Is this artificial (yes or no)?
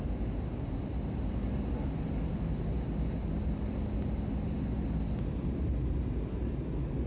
no